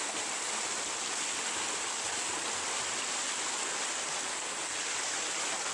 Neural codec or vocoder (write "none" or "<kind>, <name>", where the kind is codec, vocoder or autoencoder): none